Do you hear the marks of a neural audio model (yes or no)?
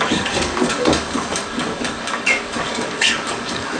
yes